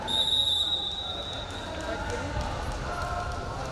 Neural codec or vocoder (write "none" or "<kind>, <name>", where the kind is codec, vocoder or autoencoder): none